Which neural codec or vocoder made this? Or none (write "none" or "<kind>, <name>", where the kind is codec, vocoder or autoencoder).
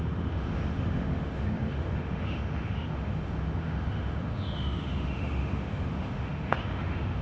autoencoder, DAC-VAE